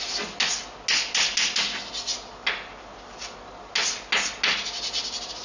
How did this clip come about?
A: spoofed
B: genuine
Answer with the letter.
B